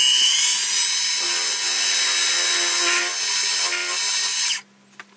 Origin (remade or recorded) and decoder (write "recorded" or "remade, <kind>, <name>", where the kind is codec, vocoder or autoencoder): recorded